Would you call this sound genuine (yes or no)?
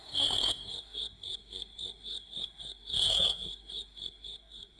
no